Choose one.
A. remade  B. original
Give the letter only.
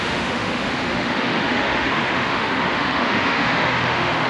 A